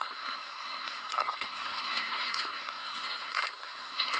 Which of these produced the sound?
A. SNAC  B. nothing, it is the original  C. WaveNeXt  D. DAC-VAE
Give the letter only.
A